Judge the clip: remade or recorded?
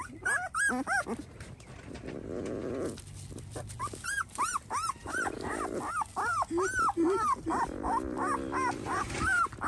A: recorded